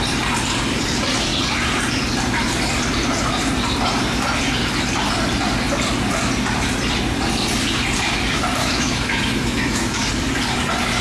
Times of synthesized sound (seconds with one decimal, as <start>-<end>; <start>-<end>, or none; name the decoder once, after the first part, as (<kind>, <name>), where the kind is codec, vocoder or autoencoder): 8.6-10.1 (autoencoder, DAC-VAE)